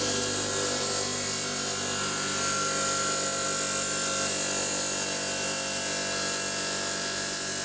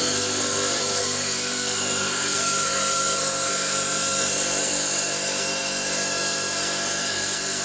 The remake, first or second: second